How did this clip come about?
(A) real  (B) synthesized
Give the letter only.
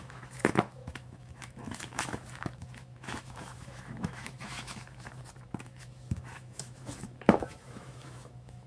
B